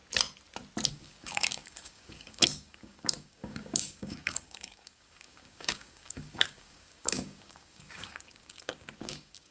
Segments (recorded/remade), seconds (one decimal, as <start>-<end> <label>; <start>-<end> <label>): 0.0-0.9 recorded; 0.9-9.5 remade